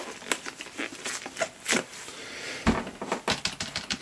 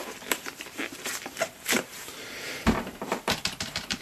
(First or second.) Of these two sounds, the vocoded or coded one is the second